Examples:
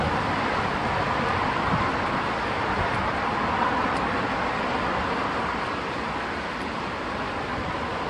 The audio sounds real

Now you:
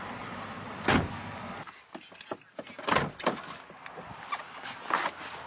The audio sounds real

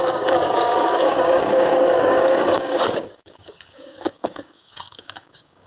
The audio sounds fake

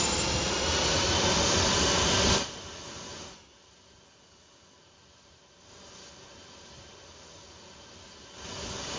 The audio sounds real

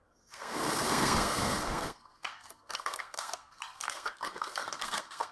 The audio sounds fake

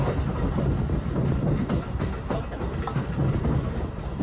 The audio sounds real